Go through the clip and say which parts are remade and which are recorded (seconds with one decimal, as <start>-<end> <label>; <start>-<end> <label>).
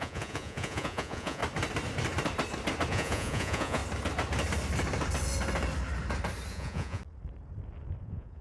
0.0-1.4 remade; 1.4-2.9 recorded; 2.9-3.8 remade; 3.8-6.5 recorded; 6.5-7.0 remade; 7.0-8.0 recorded; 8.0-8.4 remade